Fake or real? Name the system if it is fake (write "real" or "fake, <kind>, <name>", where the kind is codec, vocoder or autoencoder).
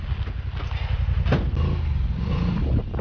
real